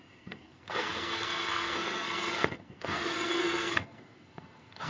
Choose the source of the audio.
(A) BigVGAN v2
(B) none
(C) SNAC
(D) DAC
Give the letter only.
C